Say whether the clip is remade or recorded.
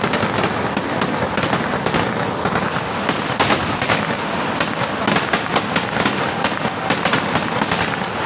recorded